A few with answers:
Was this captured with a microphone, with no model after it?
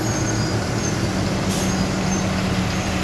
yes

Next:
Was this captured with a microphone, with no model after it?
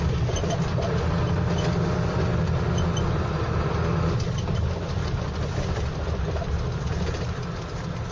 yes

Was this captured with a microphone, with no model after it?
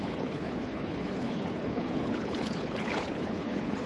no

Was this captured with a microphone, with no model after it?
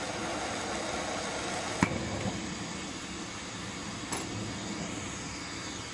yes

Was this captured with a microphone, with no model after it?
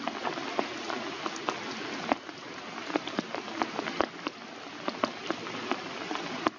yes